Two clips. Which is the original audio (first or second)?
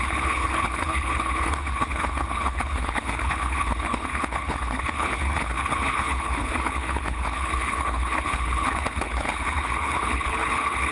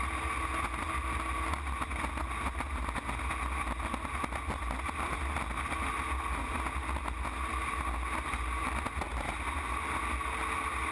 second